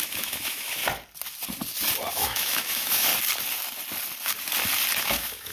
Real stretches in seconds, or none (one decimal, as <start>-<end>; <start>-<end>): 0.8-2.1; 3.1-5.0